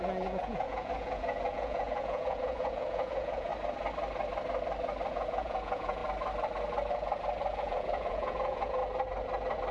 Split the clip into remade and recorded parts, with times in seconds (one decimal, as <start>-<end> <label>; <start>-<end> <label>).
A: 0.0-3.5 remade; 3.5-5.1 recorded; 5.1-6.0 remade; 6.0-7.6 recorded; 7.6-8.8 remade; 8.8-9.7 recorded